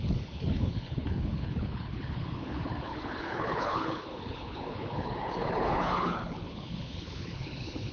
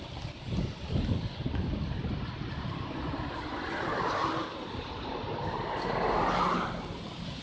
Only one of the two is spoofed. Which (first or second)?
first